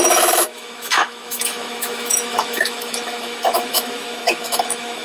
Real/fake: fake